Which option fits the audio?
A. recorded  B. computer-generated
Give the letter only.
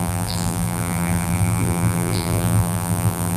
B